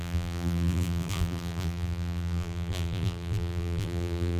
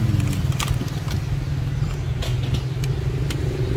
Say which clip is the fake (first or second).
first